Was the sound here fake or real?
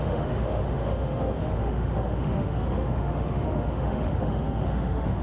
fake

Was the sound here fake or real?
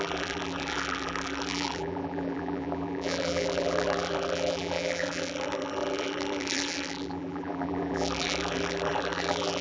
fake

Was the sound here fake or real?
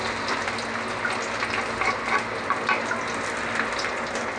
real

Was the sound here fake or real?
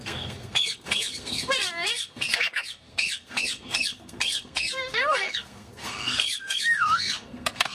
fake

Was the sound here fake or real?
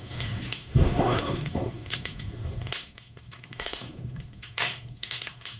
fake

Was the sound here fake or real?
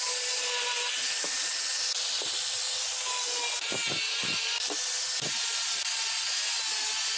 real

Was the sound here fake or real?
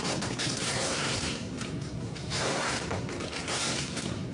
fake